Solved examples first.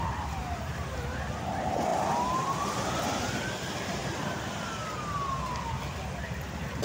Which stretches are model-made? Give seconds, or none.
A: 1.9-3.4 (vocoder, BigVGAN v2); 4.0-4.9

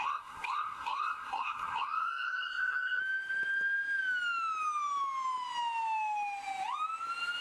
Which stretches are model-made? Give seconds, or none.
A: 0.0-3.0 (codec, SNAC)